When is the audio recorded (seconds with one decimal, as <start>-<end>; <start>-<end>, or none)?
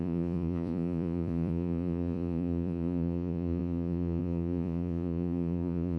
none